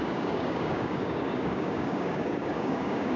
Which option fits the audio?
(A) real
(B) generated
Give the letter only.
B